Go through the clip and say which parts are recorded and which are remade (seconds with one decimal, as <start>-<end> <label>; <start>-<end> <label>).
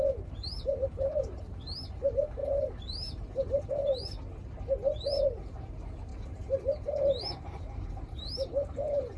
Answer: 0.0-4.0 remade; 4.0-5.2 recorded; 5.2-6.1 remade; 6.1-6.7 recorded; 6.7-9.2 remade